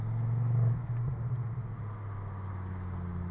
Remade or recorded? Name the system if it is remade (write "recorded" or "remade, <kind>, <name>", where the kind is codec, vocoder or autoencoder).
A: recorded